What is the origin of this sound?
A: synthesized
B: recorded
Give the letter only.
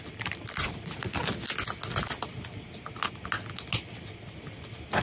B